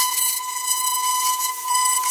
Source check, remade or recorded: remade